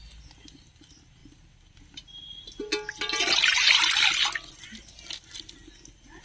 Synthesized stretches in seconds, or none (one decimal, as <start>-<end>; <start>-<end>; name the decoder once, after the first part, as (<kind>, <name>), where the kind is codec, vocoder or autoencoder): none